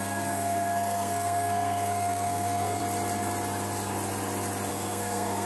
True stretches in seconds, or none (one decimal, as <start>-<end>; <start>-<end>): 2.8-4.7